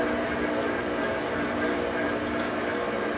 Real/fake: real